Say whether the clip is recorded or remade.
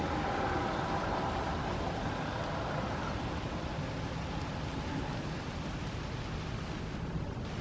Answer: recorded